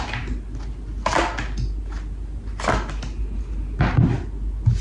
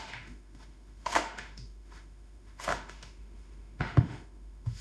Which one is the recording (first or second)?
first